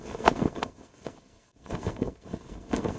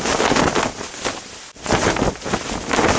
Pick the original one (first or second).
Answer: second